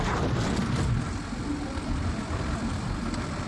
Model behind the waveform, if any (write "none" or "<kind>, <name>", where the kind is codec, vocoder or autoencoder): none